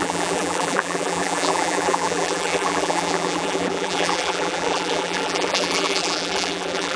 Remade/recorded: remade